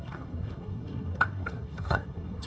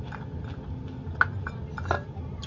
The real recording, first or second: second